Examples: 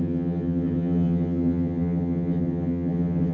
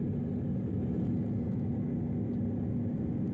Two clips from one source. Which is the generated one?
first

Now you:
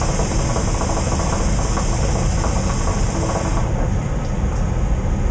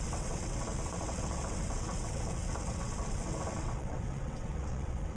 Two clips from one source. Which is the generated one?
second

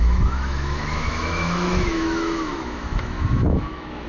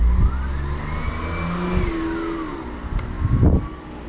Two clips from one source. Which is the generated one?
first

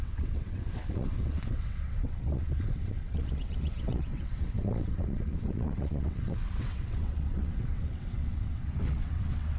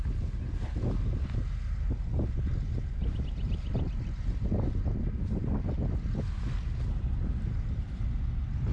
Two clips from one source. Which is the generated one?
first